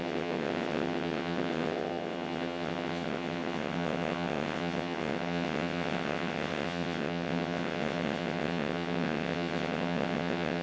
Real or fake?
fake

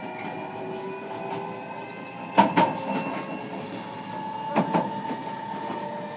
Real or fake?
real